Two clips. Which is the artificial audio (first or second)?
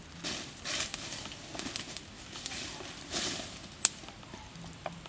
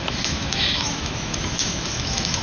second